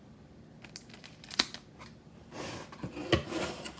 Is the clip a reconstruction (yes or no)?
no